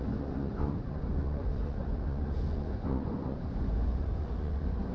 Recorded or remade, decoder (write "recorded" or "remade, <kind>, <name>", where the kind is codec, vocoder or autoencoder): remade, vocoder, Vocos